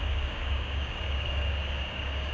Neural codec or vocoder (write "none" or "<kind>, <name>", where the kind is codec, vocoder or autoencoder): codec, DAC